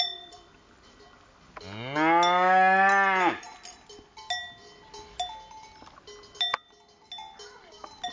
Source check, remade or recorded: recorded